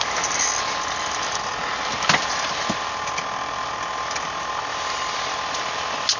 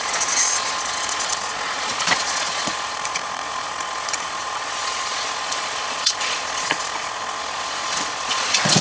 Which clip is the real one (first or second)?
first